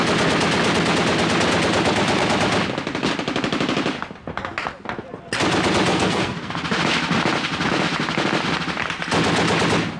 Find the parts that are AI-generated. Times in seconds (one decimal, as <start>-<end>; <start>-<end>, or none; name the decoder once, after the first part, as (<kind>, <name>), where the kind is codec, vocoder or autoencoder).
5.9-6.5 (codec, SNAC)